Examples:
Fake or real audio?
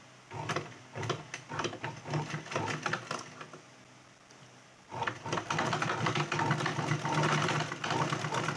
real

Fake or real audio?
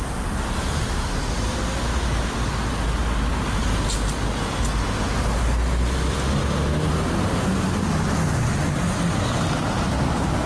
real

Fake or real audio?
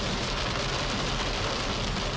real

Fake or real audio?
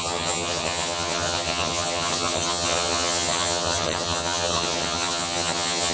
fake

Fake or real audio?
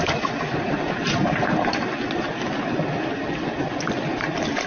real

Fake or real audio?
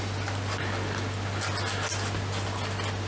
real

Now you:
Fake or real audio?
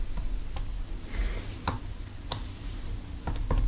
real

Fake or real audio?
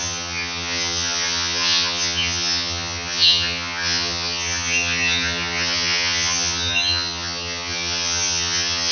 fake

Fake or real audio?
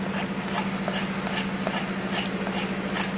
real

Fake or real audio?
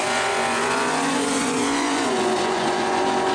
fake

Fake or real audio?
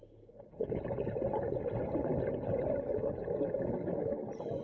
real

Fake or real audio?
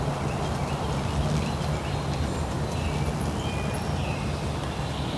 real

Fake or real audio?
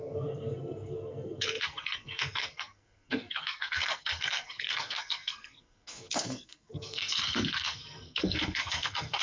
fake